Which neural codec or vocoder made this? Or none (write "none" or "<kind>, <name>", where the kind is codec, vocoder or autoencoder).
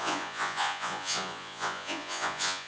vocoder, Vocos